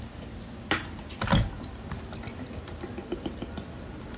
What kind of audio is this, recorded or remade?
recorded